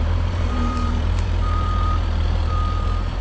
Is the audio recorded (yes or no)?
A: no